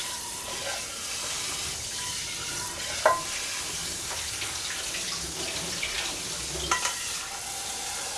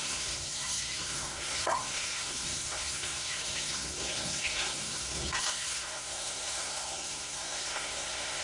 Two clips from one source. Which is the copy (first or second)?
second